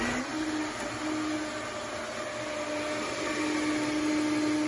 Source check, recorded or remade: recorded